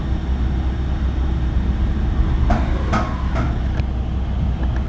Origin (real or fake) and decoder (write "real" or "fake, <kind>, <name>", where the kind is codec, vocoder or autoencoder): real